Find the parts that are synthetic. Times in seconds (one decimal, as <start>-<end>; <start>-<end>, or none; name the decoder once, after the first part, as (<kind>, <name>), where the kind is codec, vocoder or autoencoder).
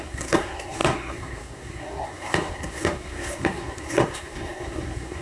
0.0-5.2 (codec, SNAC)